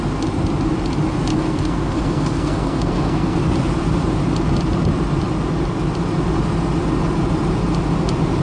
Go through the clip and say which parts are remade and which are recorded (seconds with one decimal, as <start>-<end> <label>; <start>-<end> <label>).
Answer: 0.0-1.3 recorded; 1.3-3.4 remade; 3.4-8.4 recorded